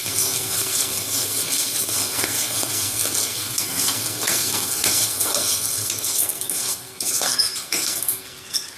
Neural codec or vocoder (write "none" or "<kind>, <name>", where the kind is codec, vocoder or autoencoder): codec, SNAC